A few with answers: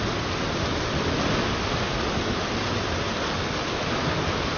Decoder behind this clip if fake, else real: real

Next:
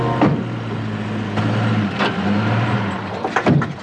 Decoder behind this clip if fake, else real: real